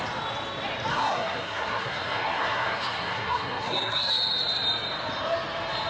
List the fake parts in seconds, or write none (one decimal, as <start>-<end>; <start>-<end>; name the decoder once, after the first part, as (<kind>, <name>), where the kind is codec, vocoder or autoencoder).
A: 0.9-4.1 (codec, SNAC)